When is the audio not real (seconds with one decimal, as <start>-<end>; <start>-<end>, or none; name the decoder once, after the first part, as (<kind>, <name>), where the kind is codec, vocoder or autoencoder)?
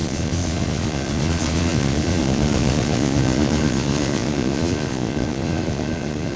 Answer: 0.0-6.4 (vocoder, Vocos)